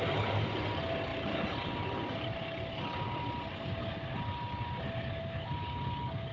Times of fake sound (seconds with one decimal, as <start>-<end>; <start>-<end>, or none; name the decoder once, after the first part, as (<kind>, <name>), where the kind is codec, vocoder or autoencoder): none